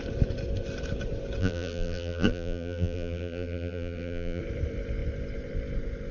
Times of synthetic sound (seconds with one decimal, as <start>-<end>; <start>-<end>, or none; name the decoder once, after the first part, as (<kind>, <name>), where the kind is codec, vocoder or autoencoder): 1.4-4.4 (vocoder, BigVGAN v2)